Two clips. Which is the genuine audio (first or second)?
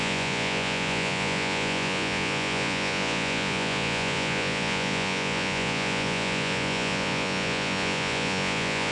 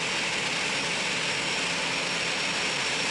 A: second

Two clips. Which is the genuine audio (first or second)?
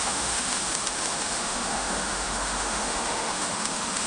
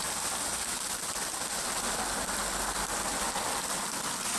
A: second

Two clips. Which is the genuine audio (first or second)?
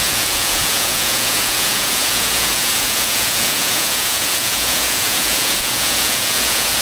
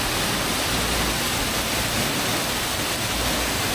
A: second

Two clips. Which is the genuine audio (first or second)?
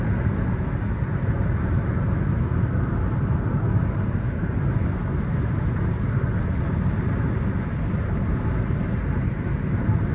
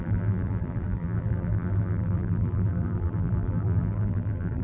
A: first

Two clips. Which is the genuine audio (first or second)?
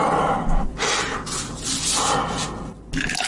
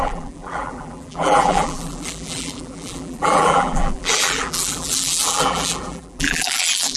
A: first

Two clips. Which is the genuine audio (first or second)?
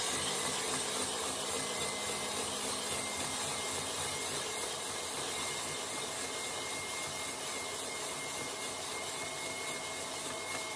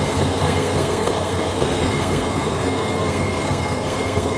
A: first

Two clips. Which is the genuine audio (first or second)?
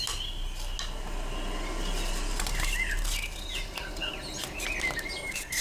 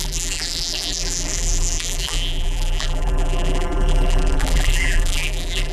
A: first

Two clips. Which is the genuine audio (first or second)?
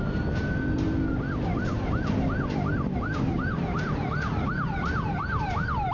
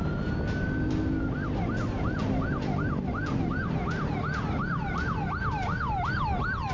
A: second